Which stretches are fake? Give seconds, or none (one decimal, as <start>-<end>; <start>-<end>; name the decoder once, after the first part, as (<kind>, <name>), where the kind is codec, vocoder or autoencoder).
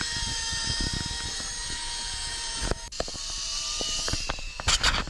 1.6-2.7 (vocoder, Vocos)